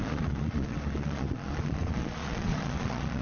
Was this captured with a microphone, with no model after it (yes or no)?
no